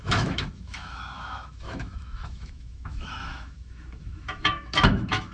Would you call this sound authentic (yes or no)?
no